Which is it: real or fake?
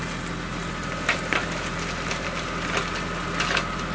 real